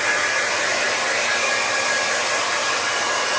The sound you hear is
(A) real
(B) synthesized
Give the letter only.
A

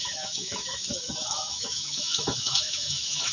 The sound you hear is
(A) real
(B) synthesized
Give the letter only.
B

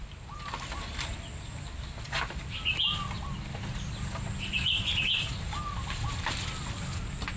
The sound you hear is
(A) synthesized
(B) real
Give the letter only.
B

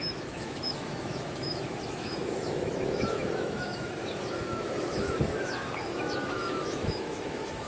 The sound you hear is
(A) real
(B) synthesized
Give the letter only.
B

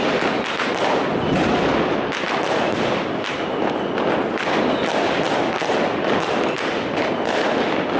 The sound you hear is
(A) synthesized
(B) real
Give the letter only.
B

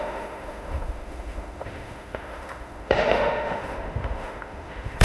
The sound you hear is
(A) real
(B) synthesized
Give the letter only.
B